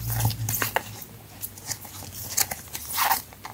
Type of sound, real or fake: real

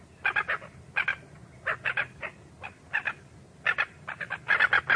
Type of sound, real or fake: real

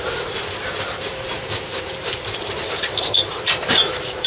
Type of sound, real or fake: fake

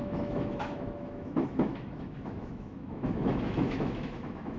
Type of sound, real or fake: fake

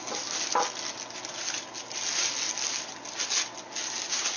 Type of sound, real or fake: real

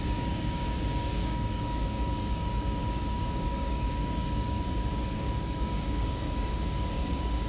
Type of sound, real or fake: fake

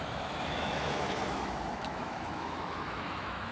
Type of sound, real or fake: fake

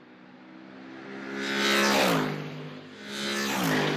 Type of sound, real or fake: real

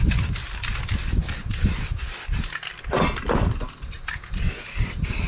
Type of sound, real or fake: real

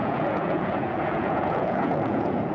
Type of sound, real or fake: fake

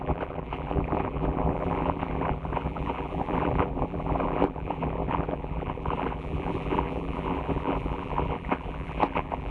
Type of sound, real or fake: fake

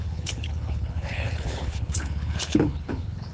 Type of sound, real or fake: fake